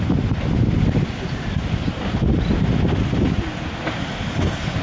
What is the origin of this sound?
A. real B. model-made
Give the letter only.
A